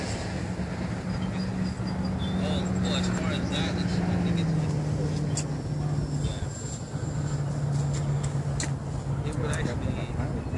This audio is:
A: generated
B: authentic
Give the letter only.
B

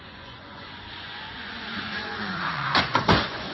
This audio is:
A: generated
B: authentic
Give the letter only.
A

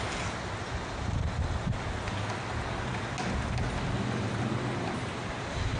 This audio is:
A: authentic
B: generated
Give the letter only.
A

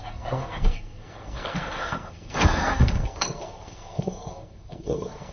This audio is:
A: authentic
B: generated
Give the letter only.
B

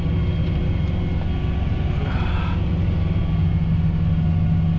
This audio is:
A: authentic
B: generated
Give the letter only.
A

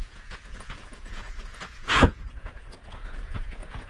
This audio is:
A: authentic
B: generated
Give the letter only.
B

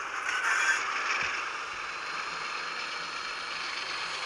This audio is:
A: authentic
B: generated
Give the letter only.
A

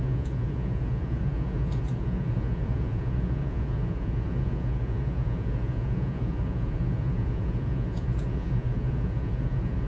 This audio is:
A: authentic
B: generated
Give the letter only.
B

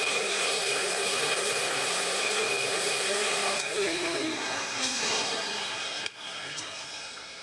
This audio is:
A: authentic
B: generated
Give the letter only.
B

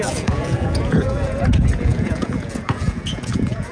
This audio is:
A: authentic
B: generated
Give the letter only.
B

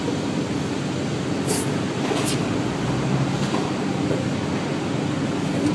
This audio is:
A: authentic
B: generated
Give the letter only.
A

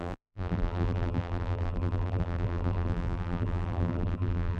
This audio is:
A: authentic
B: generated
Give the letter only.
B